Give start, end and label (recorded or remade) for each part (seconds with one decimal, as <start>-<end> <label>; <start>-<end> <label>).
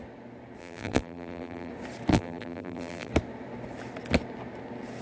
0.0-0.6 recorded; 0.6-1.7 remade; 1.7-2.1 recorded; 2.1-3.1 remade; 3.1-5.0 recorded